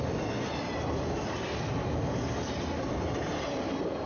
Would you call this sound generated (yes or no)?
no